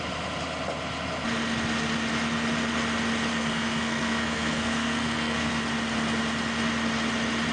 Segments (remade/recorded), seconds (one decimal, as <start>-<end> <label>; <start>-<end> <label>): 0.0-3.3 recorded; 3.3-5.6 remade; 5.6-7.5 recorded